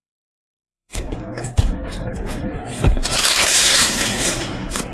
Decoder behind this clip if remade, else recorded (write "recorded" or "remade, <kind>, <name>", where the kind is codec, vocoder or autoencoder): remade, codec, SNAC